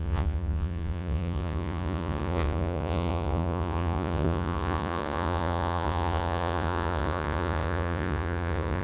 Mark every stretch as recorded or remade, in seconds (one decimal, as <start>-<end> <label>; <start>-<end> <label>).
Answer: 0.0-8.8 remade